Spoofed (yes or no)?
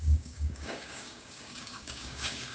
yes